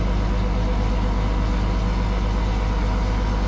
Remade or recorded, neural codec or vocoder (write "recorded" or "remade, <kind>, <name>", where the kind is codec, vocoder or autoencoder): recorded